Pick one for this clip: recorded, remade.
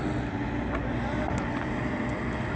recorded